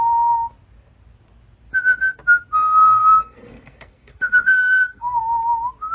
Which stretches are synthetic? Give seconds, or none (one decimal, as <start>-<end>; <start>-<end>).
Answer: 2.8-5.2